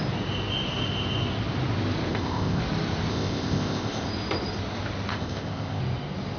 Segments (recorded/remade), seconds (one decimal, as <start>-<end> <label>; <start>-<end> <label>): 0.0-2.1 recorded; 2.1-2.6 remade; 2.6-3.1 recorded; 3.1-4.1 remade; 4.1-5.1 recorded; 5.1-5.8 remade; 5.8-6.4 recorded